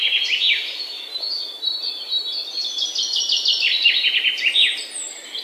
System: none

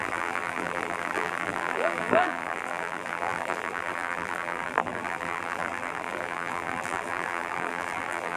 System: vocoder, BigVGAN v2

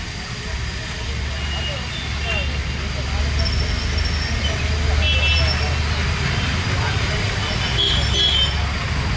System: none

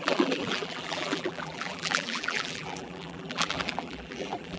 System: vocoder, BigVGAN v2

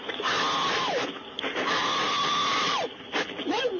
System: vocoder, BigVGAN v2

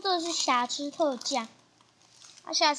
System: none